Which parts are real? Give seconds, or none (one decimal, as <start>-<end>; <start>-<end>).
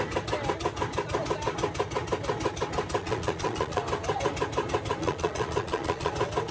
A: 0.0-3.0; 3.8-5.0; 6.1-6.5